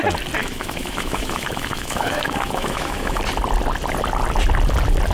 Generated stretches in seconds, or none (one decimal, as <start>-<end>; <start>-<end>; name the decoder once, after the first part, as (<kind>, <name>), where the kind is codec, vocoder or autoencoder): 0.4-3.2 (autoencoder, DAC-VAE)